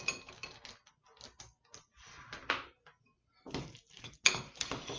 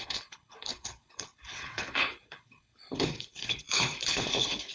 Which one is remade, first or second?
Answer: second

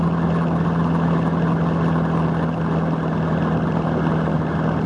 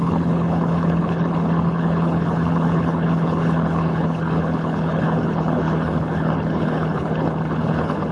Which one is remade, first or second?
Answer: second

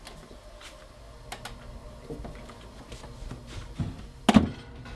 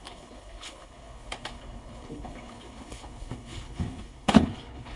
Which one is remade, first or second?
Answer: second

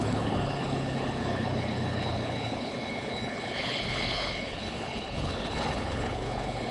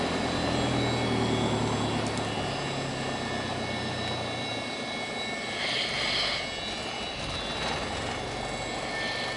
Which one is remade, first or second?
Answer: first